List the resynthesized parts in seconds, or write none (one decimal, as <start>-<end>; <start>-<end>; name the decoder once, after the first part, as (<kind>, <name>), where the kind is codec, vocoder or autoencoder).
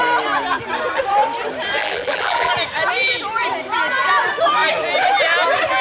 1.8-2.5 (vocoder, BigVGAN v2)